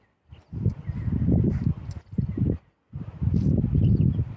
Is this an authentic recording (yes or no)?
yes